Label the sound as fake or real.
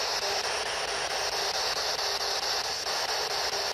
real